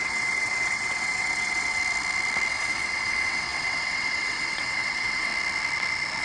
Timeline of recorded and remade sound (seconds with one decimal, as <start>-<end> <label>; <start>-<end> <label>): 0.0-1.8 remade; 1.8-2.5 recorded; 2.5-5.3 remade; 5.3-6.2 recorded